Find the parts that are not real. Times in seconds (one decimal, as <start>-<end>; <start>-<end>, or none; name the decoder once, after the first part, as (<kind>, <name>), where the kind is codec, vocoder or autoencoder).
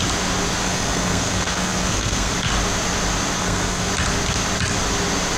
0.6-2.3 (codec, SNAC); 3.4-3.9